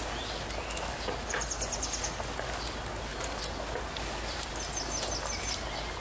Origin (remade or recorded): recorded